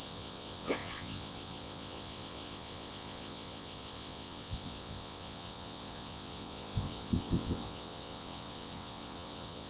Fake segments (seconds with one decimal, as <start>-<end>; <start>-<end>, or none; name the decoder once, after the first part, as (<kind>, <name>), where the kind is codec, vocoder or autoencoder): 0.0-9.7 (vocoder, WaveNeXt)